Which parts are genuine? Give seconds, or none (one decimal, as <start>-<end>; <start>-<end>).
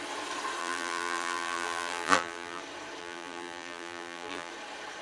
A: 0.0-0.6; 2.6-3.0; 4.5-5.0